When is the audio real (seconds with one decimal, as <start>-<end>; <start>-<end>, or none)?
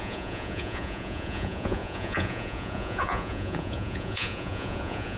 none